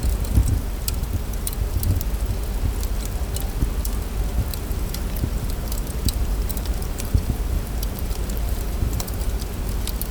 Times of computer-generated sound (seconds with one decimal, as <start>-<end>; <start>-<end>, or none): 0.4-1.8; 4.5-9.4